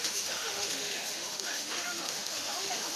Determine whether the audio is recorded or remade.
remade